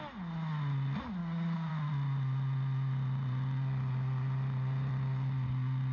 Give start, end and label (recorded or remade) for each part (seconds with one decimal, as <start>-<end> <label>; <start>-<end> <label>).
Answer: 0.0-1.2 recorded; 1.2-1.7 remade; 1.7-5.9 recorded